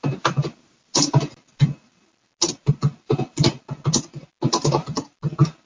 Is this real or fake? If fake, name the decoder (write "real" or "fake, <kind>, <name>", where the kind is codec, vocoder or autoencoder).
real